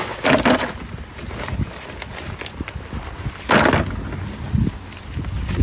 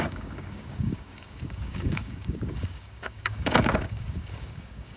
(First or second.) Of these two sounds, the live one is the first